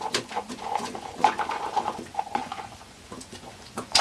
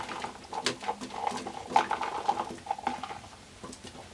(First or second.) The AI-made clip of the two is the first